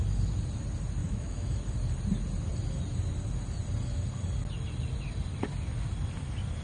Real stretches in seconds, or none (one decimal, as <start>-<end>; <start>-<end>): 0.0-1.0; 1.6-6.6